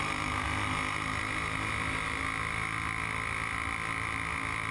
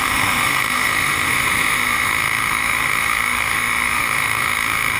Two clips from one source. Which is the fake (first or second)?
second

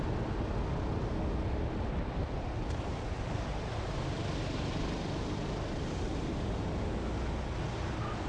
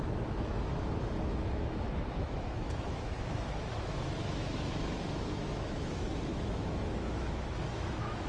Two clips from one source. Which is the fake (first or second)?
second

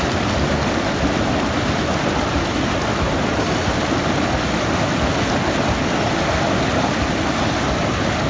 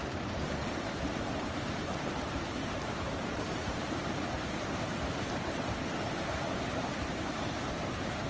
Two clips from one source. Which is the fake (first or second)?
second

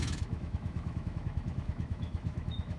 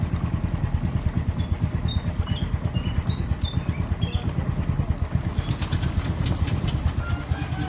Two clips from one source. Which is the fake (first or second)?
first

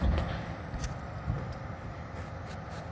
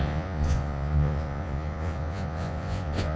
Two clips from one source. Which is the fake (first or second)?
second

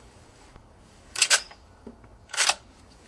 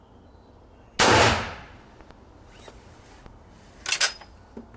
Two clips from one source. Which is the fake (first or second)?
first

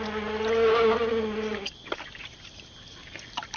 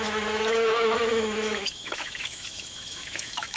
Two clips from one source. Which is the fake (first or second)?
second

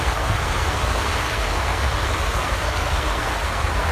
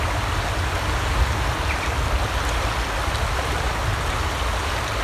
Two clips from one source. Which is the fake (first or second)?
first